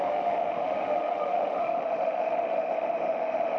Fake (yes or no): yes